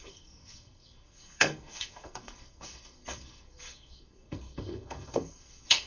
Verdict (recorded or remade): remade